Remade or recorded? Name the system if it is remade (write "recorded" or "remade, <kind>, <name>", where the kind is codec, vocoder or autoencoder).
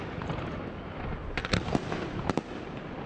recorded